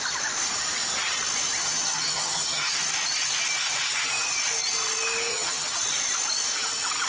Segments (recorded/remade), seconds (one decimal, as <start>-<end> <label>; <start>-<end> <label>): 0.0-1.6 recorded; 1.6-2.7 remade; 2.7-5.3 recorded; 5.3-5.8 remade; 5.8-7.1 recorded

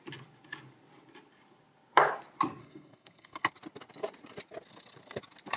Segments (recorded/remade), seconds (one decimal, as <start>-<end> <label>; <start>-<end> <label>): 0.0-2.6 recorded; 2.6-3.4 remade; 3.4-5.6 recorded

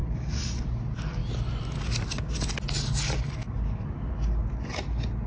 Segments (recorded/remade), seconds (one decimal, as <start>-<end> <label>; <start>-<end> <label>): 0.0-0.6 remade; 0.6-5.3 recorded